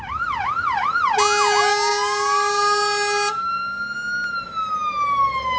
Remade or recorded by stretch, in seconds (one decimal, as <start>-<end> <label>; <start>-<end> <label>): 0.0-5.6 recorded